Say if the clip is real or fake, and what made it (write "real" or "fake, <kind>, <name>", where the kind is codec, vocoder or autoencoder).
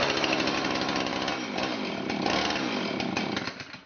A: real